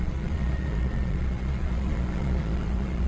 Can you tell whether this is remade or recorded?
remade